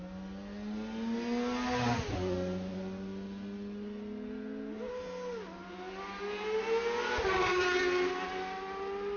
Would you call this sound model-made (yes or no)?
no